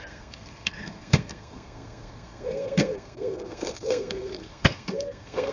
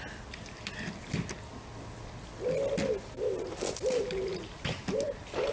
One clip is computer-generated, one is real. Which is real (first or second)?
second